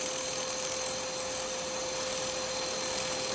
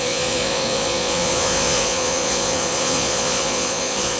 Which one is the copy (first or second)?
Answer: second